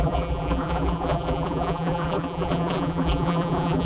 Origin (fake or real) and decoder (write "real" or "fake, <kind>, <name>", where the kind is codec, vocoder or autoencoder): fake, vocoder, BigVGAN v2